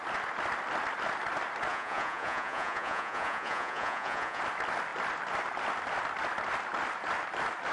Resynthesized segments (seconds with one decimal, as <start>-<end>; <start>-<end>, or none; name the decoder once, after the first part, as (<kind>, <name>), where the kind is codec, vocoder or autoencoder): 1.7-4.4 (vocoder, Vocos)